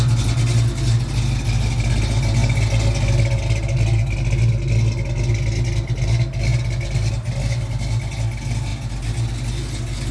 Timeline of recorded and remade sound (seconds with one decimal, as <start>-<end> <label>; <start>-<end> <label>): 0.0-10.1 recorded